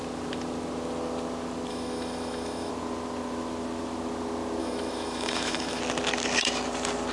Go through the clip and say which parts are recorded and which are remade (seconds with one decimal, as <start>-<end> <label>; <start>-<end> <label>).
0.0-1.7 recorded; 1.7-2.7 remade; 2.7-4.6 recorded; 4.6-5.8 remade; 5.8-7.1 recorded